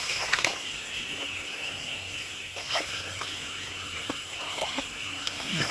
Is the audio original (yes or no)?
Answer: no